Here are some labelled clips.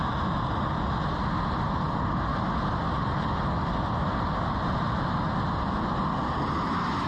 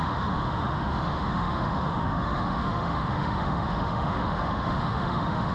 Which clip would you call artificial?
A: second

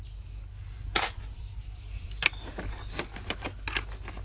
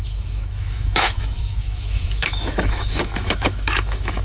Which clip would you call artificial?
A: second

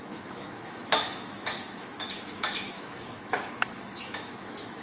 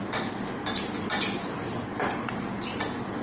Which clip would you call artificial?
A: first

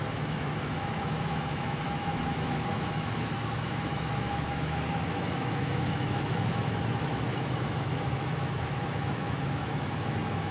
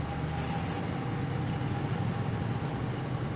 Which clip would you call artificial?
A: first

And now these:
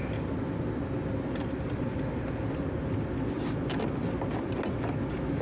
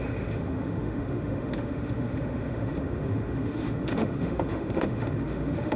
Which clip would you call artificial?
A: second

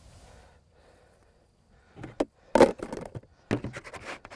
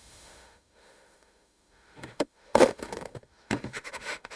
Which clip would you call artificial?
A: second